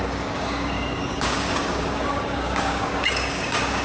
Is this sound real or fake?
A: fake